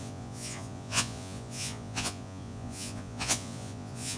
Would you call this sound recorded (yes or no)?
no